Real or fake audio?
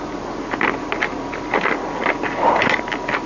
real